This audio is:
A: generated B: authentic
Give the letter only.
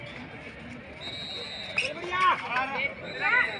B